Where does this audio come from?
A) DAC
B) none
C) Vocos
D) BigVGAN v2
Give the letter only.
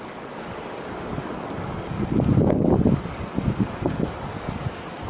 A